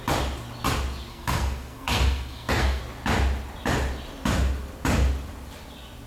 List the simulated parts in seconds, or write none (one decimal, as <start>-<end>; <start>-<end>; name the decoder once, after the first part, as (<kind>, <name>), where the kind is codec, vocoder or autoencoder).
1.1-2.8 (codec, SNAC)